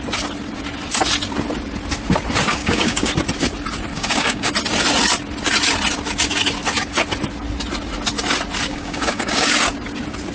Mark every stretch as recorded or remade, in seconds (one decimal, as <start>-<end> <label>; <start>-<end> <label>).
0.0-2.6 recorded; 2.6-3.1 remade; 3.1-3.9 recorded; 3.9-4.5 remade; 4.5-8.7 recorded; 8.7-9.5 remade; 9.5-10.3 recorded